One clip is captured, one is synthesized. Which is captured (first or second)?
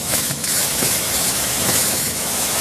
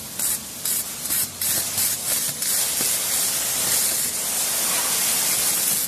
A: second